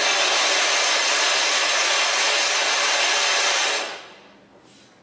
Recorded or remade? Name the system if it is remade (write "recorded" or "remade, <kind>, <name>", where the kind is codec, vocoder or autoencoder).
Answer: recorded